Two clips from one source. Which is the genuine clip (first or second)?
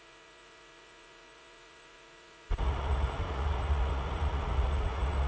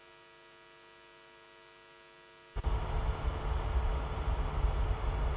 second